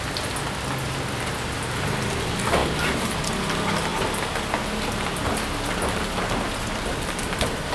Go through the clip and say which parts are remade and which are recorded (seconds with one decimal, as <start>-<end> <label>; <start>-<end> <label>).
0.0-7.7 recorded